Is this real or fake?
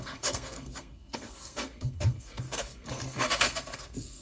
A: fake